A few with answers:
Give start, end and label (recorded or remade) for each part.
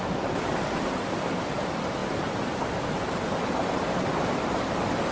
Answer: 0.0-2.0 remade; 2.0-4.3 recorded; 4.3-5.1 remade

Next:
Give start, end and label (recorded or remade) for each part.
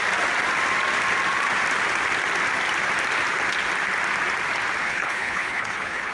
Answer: 0.0-4.8 recorded; 4.8-6.1 remade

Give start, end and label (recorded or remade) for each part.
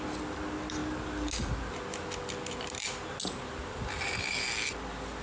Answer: 0.0-5.2 recorded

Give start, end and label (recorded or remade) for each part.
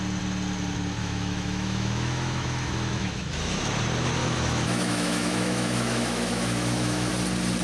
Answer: 0.0-1.0 recorded; 1.0-3.6 remade; 3.6-4.2 recorded; 4.2-7.1 remade; 7.1-7.6 recorded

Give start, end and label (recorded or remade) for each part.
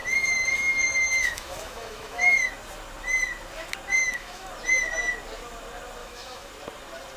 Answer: 0.0-2.5 remade; 2.5-4.0 recorded; 4.0-4.5 remade; 4.5-6.0 recorded; 6.0-6.5 remade; 6.5-7.2 recorded